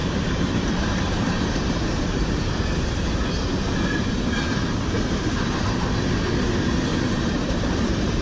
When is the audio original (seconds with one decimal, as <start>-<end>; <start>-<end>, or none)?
2.6-6.9